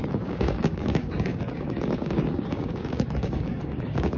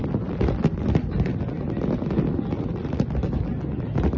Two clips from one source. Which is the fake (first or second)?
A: first